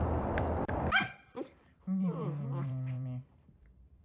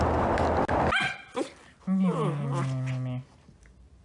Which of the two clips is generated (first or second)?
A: first